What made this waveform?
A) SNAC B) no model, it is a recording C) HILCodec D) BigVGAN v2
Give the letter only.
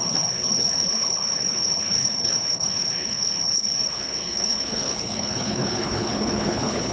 C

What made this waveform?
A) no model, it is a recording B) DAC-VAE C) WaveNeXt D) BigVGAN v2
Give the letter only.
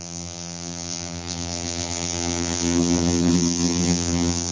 D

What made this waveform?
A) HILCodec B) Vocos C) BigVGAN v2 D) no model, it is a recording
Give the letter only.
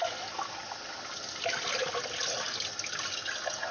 D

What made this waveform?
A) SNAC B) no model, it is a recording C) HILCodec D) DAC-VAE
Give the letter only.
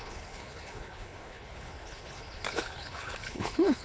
C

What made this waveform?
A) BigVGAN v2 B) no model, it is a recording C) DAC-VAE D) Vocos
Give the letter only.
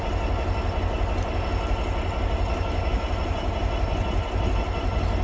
B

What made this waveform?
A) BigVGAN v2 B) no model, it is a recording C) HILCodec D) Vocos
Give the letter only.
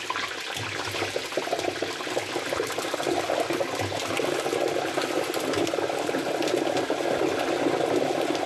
B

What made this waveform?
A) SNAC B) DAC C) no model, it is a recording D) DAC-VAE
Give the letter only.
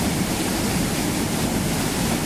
C